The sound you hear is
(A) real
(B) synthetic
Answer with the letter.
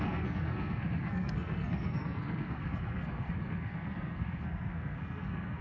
B